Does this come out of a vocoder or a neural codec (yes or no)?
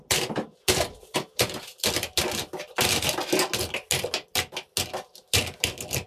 no